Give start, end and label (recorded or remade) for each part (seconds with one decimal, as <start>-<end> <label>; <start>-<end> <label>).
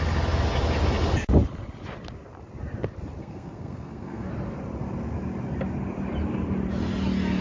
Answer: 0.0-3.2 recorded; 3.2-4.3 remade; 4.3-7.4 recorded